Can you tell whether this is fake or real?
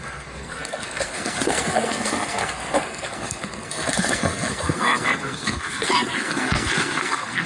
fake